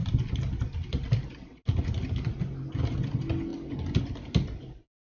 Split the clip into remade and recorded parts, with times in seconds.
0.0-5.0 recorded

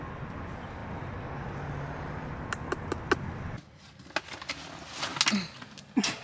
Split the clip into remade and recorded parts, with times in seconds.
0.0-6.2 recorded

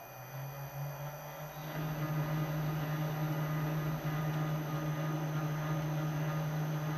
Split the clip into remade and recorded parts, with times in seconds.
0.0-7.0 recorded

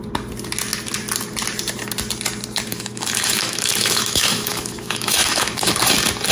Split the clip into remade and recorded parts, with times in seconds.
0.0-2.7 recorded; 2.7-5.8 remade; 5.8-6.3 recorded

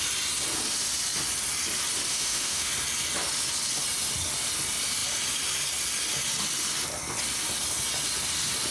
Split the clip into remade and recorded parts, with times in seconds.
0.0-2.1 recorded; 2.1-2.7 remade; 2.7-8.7 recorded

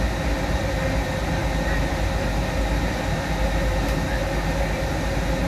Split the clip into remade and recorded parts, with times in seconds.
0.0-5.5 recorded